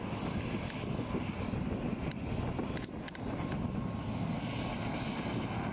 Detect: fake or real real